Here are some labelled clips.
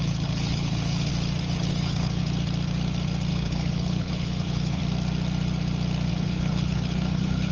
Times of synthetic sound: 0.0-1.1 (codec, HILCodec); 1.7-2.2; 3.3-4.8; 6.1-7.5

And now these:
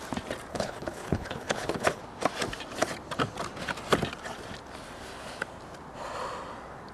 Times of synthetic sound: 0.5-2.0 (codec, HILCodec)

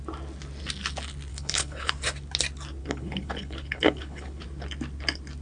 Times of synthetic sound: 1.3-1.9 (codec, HILCodec); 2.8-4.4